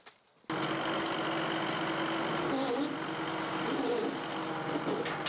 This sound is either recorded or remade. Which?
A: recorded